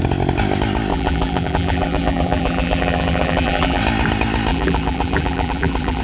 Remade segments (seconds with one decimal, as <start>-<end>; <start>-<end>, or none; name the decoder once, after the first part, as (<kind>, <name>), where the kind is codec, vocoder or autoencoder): 0.9-3.8 (vocoder, BigVGAN v2); 4.5-6.0